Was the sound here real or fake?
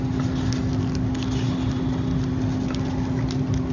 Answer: real